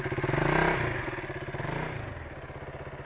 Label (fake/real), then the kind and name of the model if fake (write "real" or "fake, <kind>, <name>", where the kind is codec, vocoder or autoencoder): real